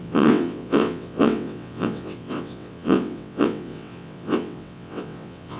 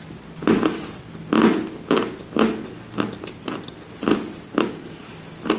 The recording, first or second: second